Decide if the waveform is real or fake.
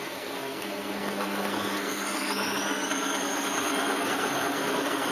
fake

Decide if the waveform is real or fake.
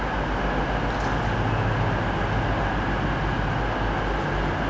real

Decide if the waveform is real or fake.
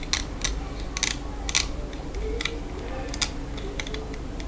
real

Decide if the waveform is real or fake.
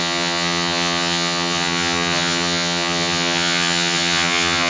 fake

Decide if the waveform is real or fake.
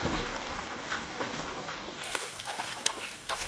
fake